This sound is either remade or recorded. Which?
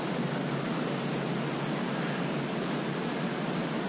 recorded